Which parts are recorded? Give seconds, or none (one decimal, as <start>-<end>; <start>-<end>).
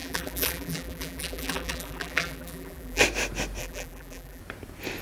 3.0-3.6; 4.4-5.0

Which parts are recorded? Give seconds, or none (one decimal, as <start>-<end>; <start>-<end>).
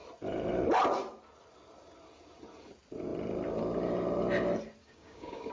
0.0-4.8